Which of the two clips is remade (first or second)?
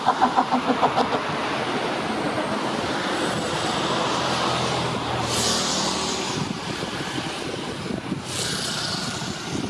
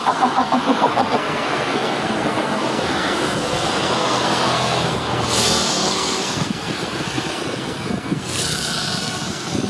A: second